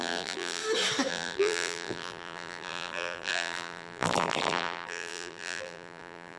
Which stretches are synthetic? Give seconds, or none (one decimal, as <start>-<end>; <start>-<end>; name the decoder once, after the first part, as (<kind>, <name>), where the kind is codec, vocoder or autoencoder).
0.0-0.6 (vocoder, BigVGAN v2); 1.1-6.4